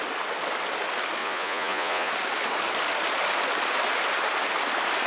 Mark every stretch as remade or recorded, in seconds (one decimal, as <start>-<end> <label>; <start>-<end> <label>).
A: 0.0-1.2 recorded; 1.2-2.1 remade; 2.1-5.1 recorded